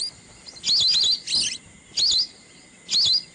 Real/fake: real